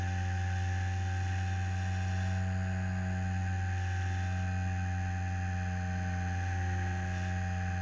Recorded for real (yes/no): yes